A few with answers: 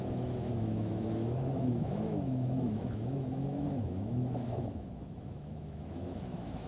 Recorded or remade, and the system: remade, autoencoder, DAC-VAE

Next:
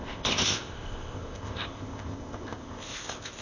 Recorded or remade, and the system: remade, codec, ZipCodec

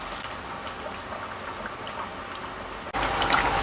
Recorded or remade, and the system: recorded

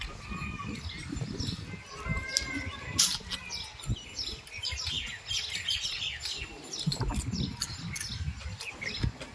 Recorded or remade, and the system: recorded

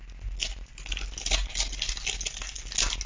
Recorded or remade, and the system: recorded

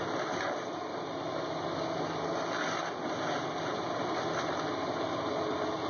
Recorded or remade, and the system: recorded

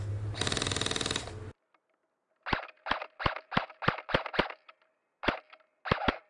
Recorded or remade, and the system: recorded